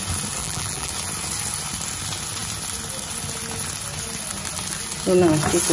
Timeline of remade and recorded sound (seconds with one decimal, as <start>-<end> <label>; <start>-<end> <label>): 0.0-0.4 recorded; 0.4-0.9 remade; 0.9-5.7 recorded